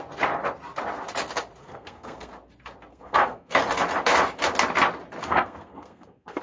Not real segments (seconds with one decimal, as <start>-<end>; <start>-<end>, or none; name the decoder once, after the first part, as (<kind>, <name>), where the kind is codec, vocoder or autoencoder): 1.6-2.3 (codec, SNAC); 2.9-3.6; 5.2-6.4